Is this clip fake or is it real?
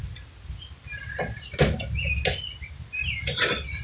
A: real